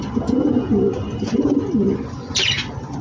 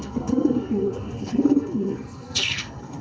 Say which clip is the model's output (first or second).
second